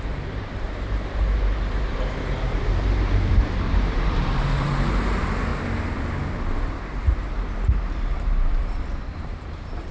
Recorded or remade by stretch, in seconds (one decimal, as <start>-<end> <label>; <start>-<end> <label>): 0.0-5.5 remade; 5.5-6.4 recorded; 6.4-9.9 remade